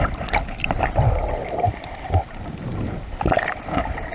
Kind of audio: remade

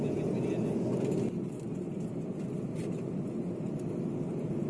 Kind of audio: recorded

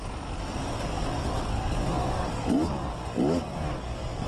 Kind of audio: recorded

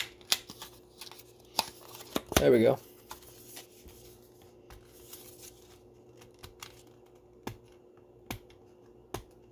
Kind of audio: recorded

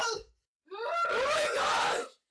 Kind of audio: remade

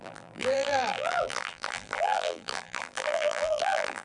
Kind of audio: remade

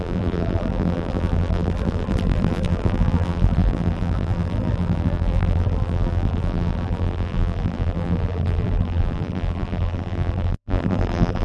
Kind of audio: remade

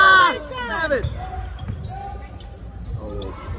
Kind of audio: remade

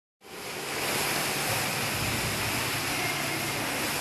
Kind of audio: recorded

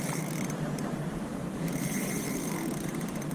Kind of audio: remade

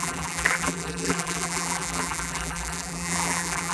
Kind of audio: remade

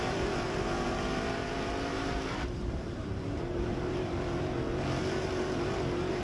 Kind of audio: remade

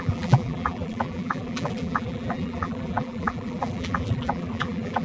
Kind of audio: remade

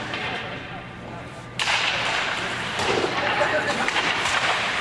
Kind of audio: remade